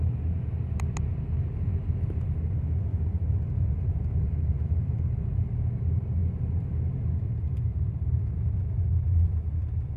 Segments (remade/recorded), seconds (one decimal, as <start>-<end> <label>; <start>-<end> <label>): 0.0-2.9 recorded; 2.9-5.5 remade; 5.5-10.0 recorded